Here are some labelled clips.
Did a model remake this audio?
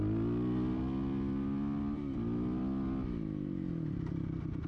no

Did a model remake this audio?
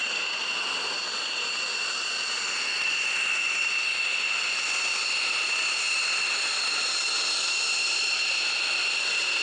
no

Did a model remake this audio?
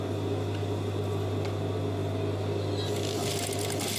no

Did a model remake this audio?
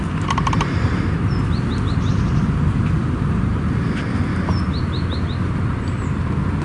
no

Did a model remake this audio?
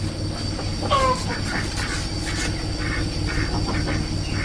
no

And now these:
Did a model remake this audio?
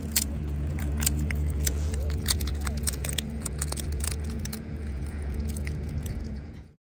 yes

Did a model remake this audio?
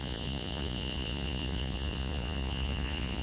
yes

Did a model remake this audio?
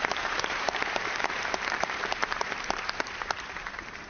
yes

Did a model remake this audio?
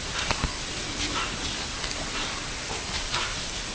no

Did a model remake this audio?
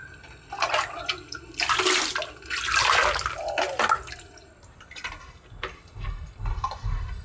no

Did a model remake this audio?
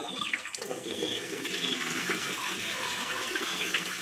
yes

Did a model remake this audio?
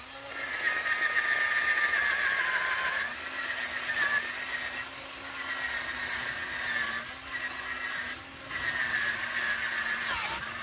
no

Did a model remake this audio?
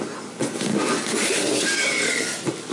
no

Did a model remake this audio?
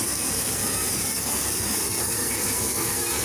yes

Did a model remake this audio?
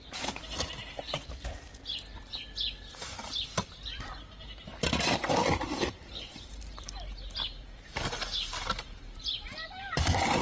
yes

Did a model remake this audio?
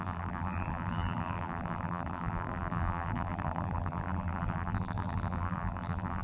yes